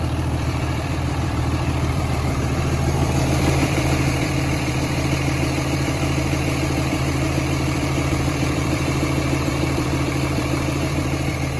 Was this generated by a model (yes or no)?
yes